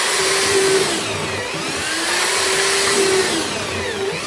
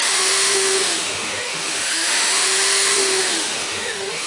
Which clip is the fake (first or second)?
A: second